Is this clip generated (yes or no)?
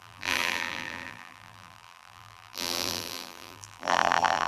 yes